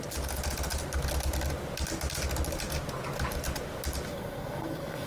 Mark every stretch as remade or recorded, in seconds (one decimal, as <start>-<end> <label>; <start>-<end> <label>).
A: 0.0-4.1 recorded; 4.1-5.1 remade